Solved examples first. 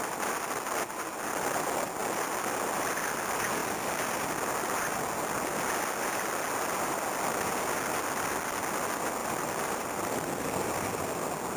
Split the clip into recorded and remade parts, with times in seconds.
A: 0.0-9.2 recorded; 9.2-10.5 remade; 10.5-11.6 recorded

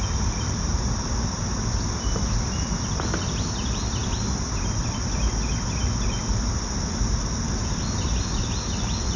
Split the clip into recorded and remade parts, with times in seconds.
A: 0.0-9.2 recorded

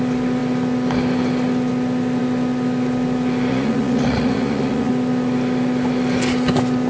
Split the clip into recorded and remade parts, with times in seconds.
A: 0.0-3.5 recorded; 3.5-4.9 remade; 4.9-6.9 recorded

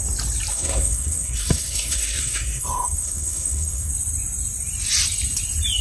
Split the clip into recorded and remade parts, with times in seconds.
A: 0.0-0.5 recorded; 0.5-3.9 remade; 3.9-5.8 recorded

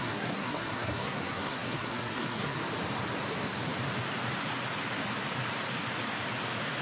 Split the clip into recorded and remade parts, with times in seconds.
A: 0.0-2.6 remade; 2.6-6.8 recorded

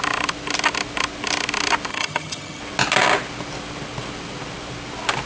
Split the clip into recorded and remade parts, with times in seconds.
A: 0.0-1.9 recorded; 1.9-2.6 remade; 2.6-5.3 recorded

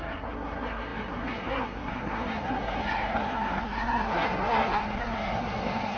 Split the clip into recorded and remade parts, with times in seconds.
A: 0.0-6.0 remade